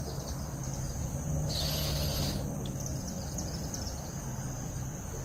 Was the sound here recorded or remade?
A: recorded